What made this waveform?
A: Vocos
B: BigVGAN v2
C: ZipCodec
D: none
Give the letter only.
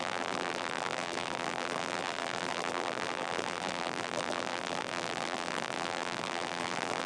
B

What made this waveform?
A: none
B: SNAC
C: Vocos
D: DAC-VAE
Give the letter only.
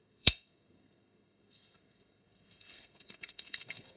B